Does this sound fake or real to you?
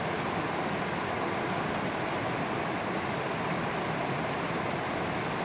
real